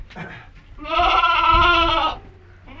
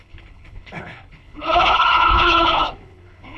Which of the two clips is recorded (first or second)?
first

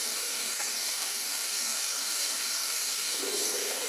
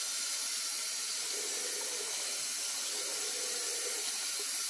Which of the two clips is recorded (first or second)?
second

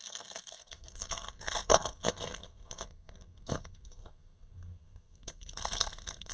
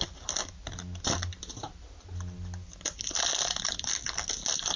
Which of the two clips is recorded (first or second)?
second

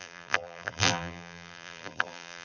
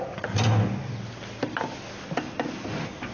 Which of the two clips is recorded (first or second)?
second